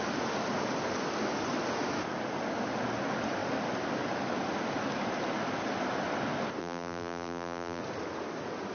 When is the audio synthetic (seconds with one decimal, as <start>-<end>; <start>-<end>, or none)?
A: 6.6-7.8